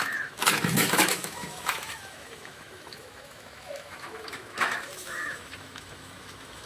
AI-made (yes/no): yes